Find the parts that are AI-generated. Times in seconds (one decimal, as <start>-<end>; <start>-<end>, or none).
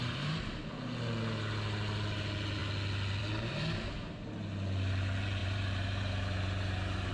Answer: 0.0-0.5; 5.4-7.1